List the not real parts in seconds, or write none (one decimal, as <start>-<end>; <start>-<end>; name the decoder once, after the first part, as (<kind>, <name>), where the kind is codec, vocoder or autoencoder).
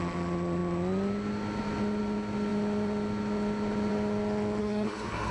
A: 4.6-5.3 (codec, SNAC)